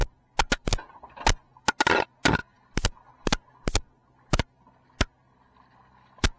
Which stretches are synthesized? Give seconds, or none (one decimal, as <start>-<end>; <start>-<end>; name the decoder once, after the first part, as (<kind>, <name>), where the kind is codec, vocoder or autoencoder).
none

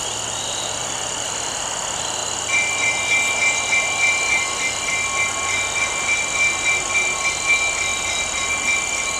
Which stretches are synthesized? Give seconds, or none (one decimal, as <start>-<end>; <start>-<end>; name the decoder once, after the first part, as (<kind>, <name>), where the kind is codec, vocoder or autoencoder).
0.8-1.3 (vocoder, BigVGAN v2)

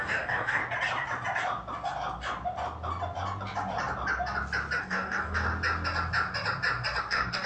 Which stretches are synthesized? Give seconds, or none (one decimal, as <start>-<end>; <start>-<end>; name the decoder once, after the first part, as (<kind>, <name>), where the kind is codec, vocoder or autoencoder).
0.0-0.6 (codec, DAC); 4.8-5.5; 7.0-7.5

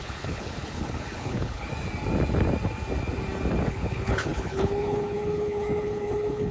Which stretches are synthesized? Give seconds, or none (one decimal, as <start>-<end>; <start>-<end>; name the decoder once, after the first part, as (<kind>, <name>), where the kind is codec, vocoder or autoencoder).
0.0-1.7 (codec, HILCodec); 3.7-6.5

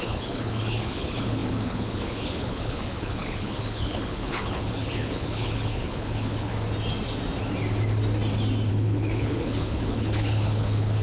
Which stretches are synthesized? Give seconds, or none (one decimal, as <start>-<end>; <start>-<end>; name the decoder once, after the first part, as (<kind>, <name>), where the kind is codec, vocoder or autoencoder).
0.0-6.5 (codec, HILCodec); 8.7-11.0

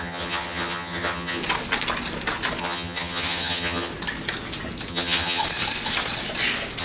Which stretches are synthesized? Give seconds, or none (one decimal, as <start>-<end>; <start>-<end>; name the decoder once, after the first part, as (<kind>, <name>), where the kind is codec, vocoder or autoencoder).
0.0-1.4 (vocoder, HiFi-GAN); 2.6-3.9; 4.9-5.4